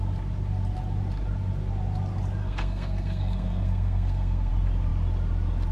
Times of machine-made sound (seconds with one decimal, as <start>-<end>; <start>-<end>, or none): 2.4-4.5